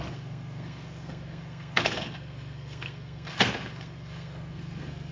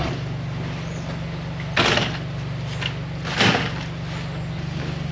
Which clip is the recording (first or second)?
second